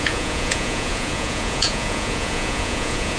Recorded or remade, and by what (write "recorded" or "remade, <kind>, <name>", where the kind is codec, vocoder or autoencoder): remade, vocoder, Vocos